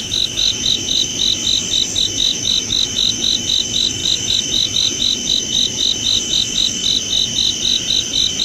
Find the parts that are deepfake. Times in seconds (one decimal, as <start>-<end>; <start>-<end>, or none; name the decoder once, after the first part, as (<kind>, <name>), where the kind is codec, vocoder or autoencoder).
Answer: 0.0-1.1 (autoencoder, DAC-VAE); 2.0-6.8